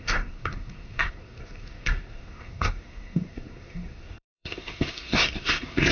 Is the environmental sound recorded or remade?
remade